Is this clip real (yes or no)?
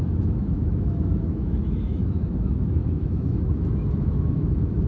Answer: no